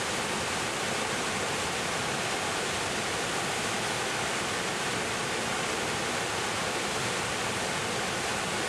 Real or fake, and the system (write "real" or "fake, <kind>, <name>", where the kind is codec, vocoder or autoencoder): real